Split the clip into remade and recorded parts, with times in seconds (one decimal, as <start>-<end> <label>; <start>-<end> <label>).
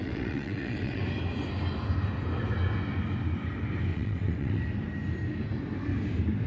0.0-1.0 remade; 1.0-3.9 recorded; 3.9-4.6 remade; 4.6-6.5 recorded